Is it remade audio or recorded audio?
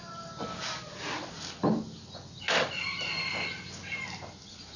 recorded